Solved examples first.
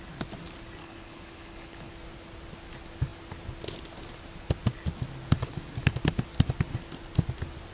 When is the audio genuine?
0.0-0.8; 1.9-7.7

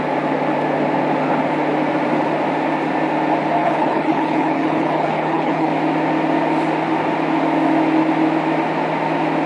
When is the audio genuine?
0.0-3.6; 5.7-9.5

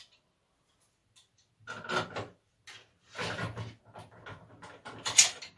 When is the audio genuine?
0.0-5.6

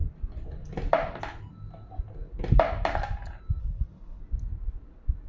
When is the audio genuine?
0.0-3.6; 4.2-5.3

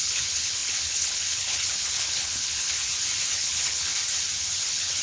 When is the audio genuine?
2.8-3.4; 3.9-4.4

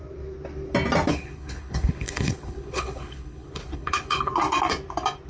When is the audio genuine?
0.0-1.1; 4.3-5.3

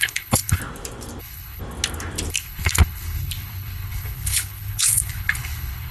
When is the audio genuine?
0.6-1.2; 1.6-2.3